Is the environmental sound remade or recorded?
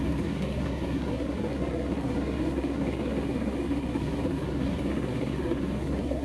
remade